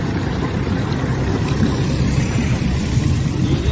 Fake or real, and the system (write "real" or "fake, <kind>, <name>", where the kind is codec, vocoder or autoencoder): fake, vocoder, BigVGAN v2